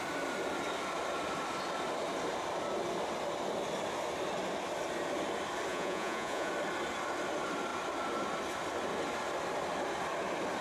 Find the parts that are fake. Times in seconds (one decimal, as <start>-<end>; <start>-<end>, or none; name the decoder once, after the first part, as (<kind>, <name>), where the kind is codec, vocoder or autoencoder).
5.7-6.5 (vocoder, Vocos)